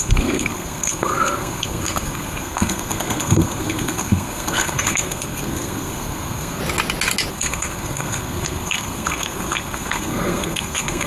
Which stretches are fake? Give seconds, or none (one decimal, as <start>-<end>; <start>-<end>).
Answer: 0.0-6.6; 7.3-11.1